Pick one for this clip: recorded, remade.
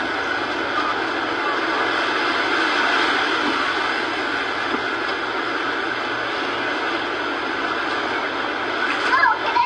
recorded